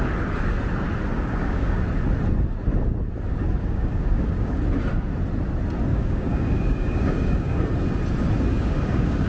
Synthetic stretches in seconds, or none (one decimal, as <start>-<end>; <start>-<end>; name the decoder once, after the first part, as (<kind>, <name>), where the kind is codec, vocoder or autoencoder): 1.1-1.8 (codec, DAC); 3.6-4.6; 5.9-7.6; 8.5-9.3